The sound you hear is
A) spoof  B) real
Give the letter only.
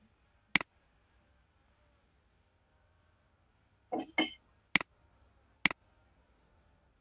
B